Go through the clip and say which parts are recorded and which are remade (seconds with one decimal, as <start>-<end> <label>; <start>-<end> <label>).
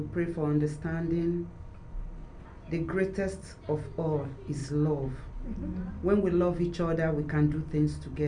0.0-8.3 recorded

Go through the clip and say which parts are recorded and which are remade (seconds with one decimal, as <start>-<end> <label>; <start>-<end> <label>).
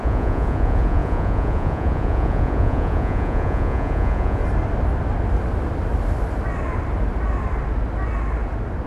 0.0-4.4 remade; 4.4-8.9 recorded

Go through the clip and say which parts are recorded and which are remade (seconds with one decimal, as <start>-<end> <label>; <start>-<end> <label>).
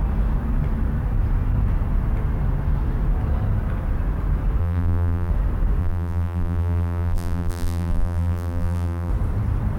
0.0-4.6 recorded; 4.6-5.3 remade; 5.3-5.8 recorded; 5.8-9.1 remade; 9.1-9.8 recorded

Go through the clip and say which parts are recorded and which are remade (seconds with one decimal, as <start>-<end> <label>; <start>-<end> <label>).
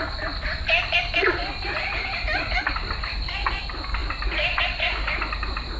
0.0-4.0 recorded; 4.0-4.6 remade; 4.6-5.8 recorded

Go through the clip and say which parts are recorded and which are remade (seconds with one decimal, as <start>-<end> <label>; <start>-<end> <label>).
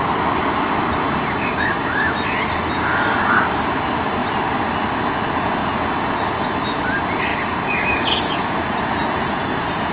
0.0-7.3 recorded; 7.3-9.9 remade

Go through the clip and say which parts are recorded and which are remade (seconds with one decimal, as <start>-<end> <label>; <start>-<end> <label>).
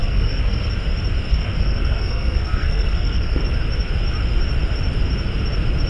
0.0-0.7 remade; 0.7-1.3 recorded; 1.3-3.4 remade; 3.4-5.9 recorded